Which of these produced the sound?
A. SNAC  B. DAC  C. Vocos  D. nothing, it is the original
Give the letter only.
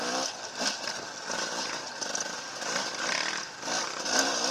D